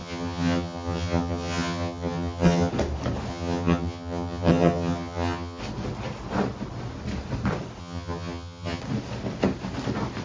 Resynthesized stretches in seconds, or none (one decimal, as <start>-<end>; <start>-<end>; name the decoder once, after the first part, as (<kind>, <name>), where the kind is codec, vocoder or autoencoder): 0.0-2.7 (vocoder, HiFi-GAN); 3.3-5.6; 7.8-8.8